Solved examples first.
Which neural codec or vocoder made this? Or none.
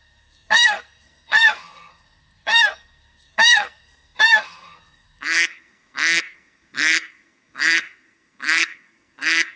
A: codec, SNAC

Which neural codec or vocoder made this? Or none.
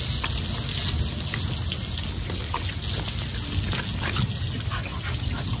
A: none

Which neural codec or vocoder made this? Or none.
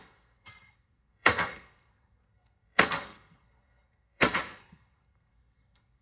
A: codec, SNAC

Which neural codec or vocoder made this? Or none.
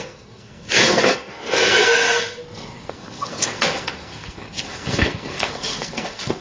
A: codec, SNAC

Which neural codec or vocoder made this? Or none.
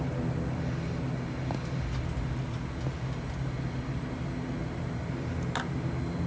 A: none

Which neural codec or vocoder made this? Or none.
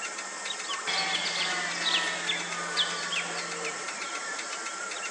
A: none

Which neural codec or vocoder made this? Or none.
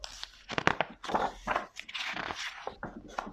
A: none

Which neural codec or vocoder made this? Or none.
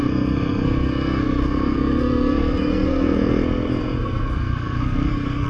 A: codec, SNAC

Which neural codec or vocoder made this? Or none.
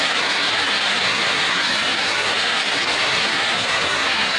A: codec, SNAC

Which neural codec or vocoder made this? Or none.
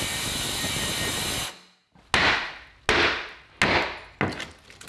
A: none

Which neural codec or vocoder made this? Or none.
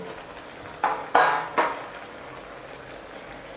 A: none